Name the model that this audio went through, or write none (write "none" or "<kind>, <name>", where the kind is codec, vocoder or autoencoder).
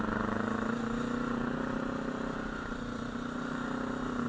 none